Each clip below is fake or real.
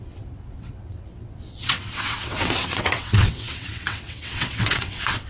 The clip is fake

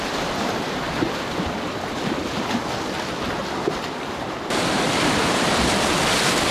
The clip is real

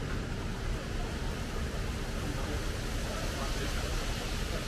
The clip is real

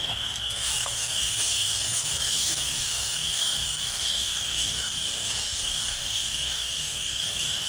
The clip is fake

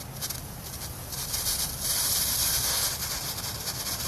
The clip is real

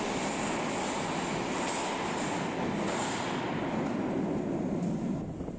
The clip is real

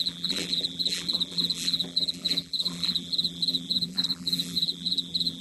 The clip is fake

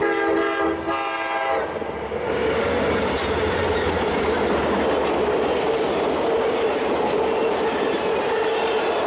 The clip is real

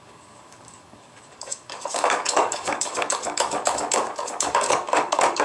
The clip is fake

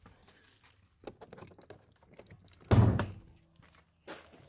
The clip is real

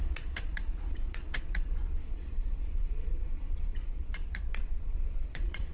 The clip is fake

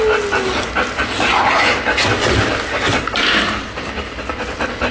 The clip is real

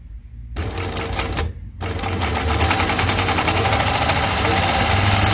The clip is real